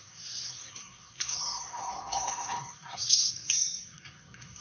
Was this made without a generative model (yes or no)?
no